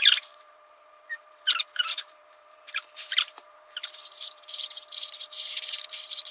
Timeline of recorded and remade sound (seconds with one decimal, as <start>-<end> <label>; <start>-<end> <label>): 0.0-6.3 remade